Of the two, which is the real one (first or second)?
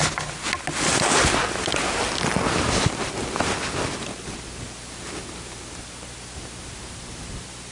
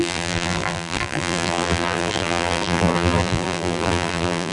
first